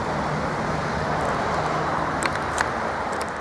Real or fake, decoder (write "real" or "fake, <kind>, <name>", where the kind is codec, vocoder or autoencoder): real